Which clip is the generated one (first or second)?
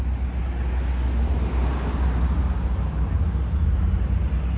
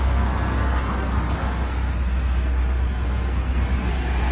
second